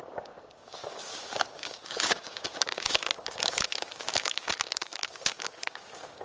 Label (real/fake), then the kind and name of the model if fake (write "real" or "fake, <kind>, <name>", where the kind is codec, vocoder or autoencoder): fake, codec, DAC